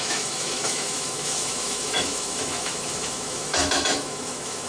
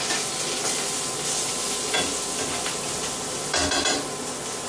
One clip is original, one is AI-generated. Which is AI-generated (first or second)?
first